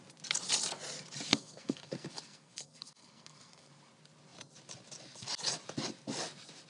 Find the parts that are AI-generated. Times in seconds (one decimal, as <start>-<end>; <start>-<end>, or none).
1.3-3.7

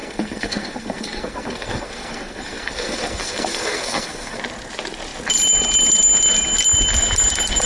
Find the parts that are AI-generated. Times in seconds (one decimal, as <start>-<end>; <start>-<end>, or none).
0.0-4.4

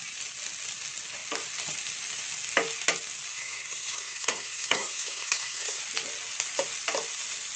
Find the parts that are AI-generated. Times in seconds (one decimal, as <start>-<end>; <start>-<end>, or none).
3.3-5.8

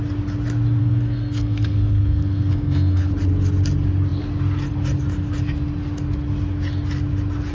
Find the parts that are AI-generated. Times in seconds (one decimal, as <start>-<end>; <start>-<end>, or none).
0.8-3.1

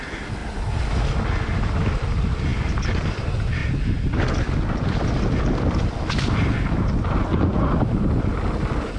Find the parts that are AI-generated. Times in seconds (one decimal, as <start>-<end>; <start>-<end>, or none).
none

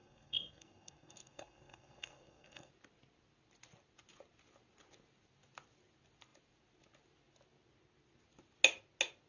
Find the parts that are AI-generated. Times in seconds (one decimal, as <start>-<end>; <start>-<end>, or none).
0.0-2.7